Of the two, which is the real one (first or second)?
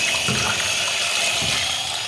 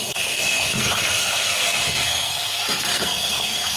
first